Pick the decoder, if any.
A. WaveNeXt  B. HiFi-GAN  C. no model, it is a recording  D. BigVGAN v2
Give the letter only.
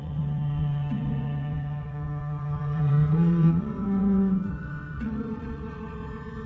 A